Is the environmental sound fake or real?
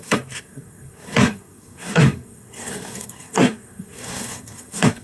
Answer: fake